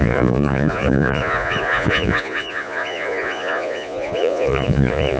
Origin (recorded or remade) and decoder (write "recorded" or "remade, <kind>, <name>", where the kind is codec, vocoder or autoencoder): remade, vocoder, Vocos